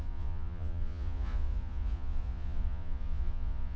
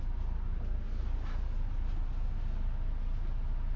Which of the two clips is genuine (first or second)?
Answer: second